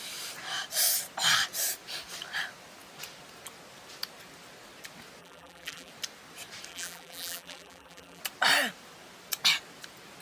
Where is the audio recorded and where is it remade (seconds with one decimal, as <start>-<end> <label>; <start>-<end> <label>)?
0.0-5.2 recorded; 5.2-5.9 remade; 5.9-6.7 recorded; 6.7-8.2 remade; 8.2-10.2 recorded